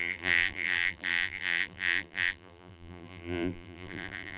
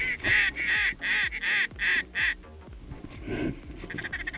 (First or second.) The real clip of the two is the second